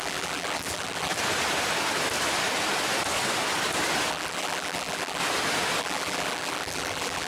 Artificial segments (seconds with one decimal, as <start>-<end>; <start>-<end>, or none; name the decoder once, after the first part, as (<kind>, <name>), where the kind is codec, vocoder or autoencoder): 0.0-1.1 (vocoder, BigVGAN v2); 4.1-5.2; 5.8-7.3